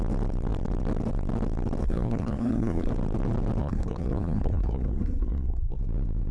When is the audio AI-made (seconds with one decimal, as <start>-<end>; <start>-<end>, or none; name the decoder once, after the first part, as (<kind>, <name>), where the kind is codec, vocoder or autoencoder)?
1.8-2.9 (codec, SNAC); 3.6-5.8